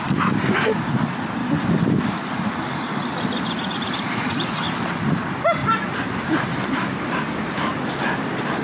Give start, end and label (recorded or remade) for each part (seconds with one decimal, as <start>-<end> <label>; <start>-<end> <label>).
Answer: 0.0-1.4 recorded; 1.4-4.9 remade; 4.9-5.6 recorded; 5.6-7.9 remade; 7.9-8.6 recorded